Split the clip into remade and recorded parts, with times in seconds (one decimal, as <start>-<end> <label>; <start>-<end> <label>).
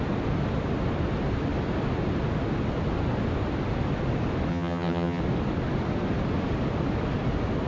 0.0-4.5 recorded; 4.5-5.2 remade; 5.2-7.7 recorded